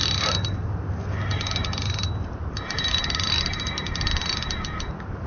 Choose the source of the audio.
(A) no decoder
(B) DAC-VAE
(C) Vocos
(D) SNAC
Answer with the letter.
A